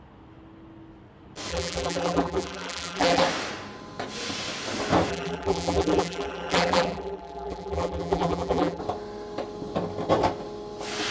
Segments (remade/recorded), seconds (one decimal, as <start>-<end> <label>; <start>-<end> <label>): 0.0-1.5 recorded; 1.5-3.2 remade; 3.2-5.1 recorded; 5.1-8.8 remade; 8.8-11.1 recorded